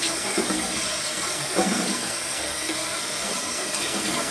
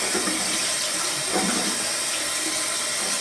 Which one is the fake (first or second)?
first